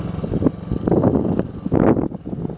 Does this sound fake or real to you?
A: real